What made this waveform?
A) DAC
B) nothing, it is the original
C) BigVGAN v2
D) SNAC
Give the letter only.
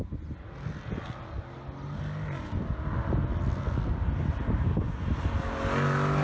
B